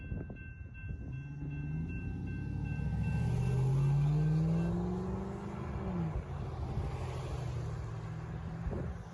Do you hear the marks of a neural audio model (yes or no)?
no